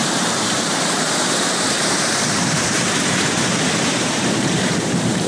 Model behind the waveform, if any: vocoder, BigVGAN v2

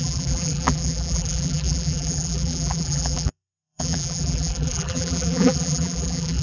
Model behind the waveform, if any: vocoder, BigVGAN v2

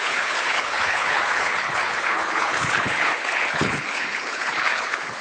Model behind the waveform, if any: codec, HILCodec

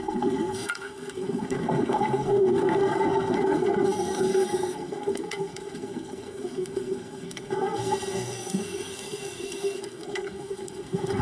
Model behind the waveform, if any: codec, SNAC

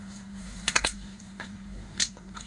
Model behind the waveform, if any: codec, SNAC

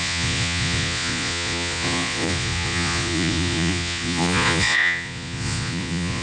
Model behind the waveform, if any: vocoder, Vocos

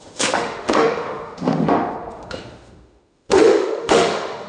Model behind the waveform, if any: autoencoder, DAC-VAE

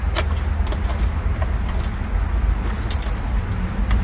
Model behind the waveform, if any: none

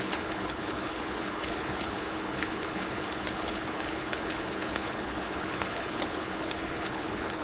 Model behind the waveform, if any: codec, HILCodec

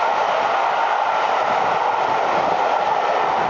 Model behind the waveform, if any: none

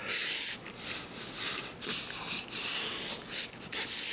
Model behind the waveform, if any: none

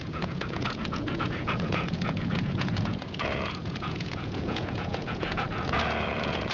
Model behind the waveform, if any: vocoder, Vocos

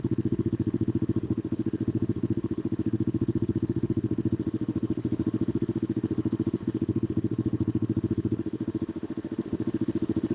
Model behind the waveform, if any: autoencoder, DAC-VAE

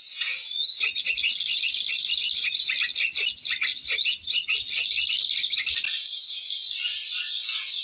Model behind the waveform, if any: none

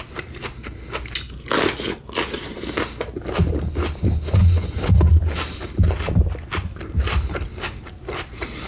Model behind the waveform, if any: none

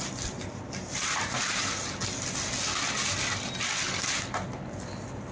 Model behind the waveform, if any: none